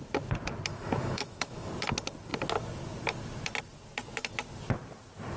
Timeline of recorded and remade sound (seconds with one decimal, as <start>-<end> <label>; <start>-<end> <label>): 0.0-0.7 recorded; 0.7-1.7 remade; 1.7-5.4 recorded